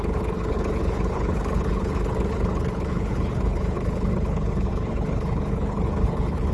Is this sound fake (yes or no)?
yes